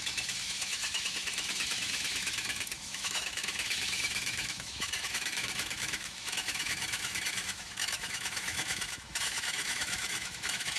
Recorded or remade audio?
remade